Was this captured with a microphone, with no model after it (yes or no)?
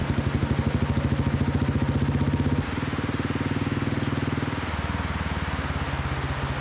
yes